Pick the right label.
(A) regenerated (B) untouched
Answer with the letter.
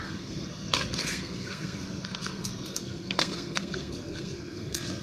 A